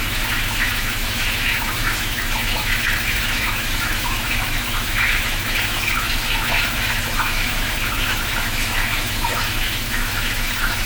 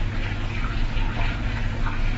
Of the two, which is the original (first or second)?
second